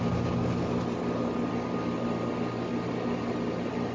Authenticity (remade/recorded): recorded